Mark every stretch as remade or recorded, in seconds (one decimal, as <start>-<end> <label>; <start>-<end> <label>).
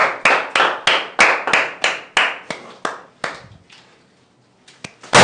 0.0-5.2 recorded